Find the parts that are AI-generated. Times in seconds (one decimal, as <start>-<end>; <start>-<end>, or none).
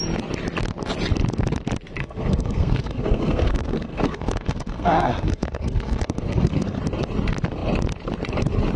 2.0-6.8